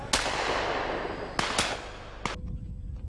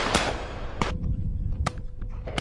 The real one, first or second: first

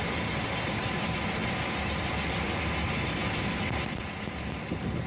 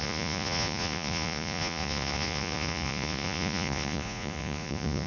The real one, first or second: first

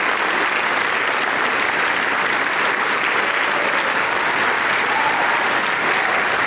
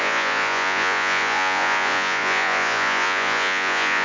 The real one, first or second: first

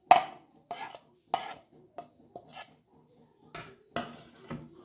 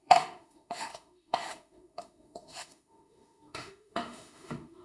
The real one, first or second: first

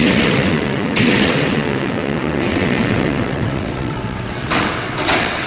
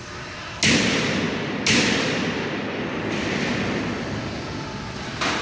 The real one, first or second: second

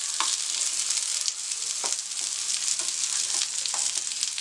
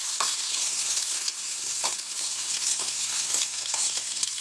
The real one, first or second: first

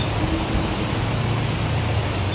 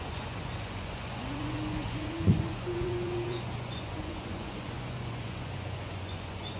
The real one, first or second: first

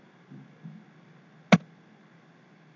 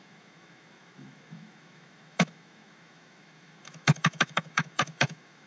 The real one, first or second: first